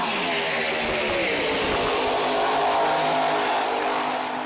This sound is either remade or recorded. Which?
recorded